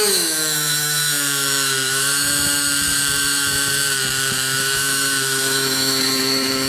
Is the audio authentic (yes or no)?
no